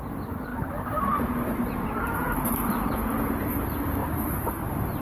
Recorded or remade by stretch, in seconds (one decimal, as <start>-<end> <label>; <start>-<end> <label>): 0.0-0.5 recorded; 0.5-3.5 remade; 3.5-4.0 recorded; 4.0-4.5 remade; 4.5-5.0 recorded